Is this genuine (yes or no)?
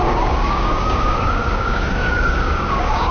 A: no